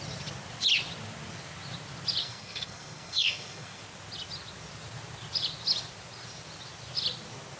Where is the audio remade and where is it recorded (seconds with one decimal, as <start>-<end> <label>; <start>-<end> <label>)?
0.0-2.2 recorded; 2.2-3.8 remade; 3.8-7.6 recorded